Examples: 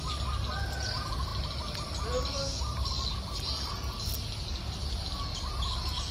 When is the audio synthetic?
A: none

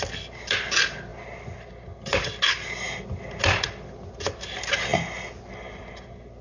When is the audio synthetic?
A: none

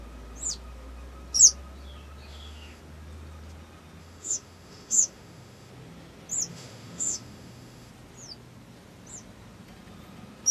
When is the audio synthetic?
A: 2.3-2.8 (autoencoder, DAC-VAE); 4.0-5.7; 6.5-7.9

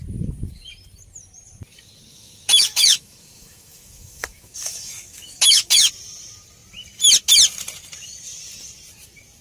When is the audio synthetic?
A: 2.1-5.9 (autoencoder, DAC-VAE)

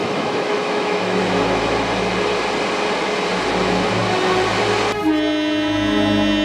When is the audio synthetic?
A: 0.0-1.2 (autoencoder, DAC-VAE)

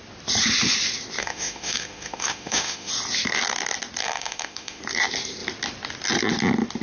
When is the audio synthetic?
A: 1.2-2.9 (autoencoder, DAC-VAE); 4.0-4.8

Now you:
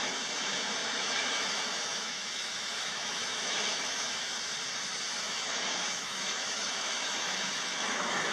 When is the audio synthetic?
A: 0.0-4.3 (autoencoder, DAC-VAE); 5.1-8.3

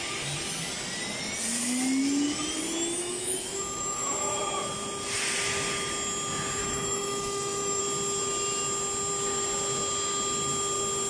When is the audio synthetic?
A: 3.0-4.4 (autoencoder, DAC-VAE); 6.6-7.8